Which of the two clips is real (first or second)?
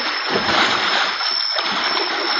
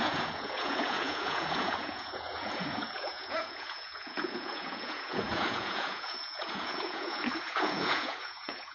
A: first